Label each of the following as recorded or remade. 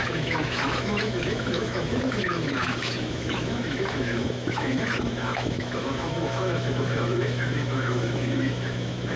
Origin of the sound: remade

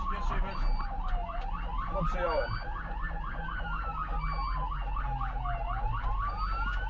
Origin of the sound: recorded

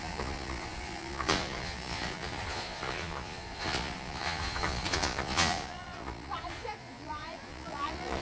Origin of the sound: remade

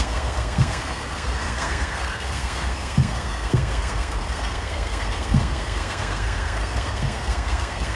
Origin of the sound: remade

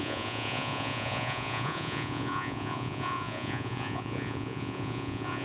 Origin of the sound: remade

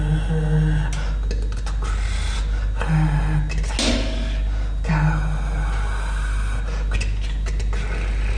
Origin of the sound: recorded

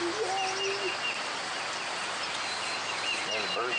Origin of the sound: recorded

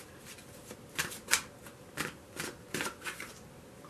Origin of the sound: recorded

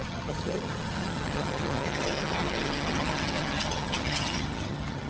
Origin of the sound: remade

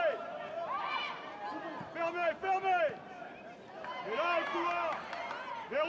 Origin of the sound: recorded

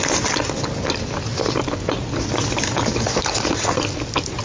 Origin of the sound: recorded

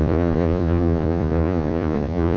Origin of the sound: remade